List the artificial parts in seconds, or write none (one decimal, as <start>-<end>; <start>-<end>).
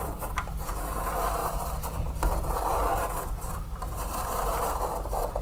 0.0-5.4